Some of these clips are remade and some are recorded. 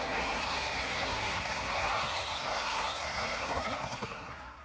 remade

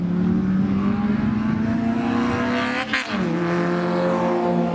recorded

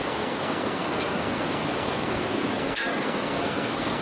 remade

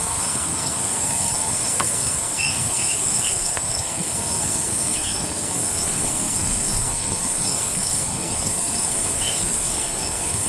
remade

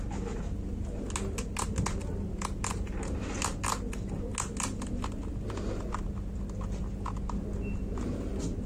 recorded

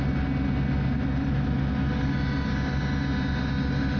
recorded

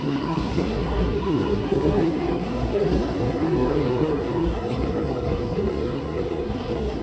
remade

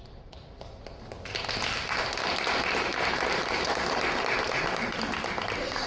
recorded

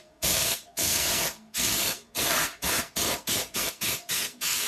remade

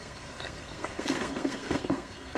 remade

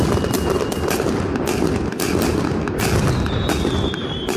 recorded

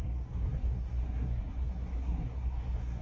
remade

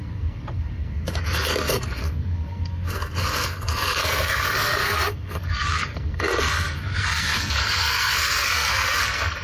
remade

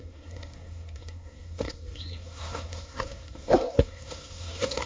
remade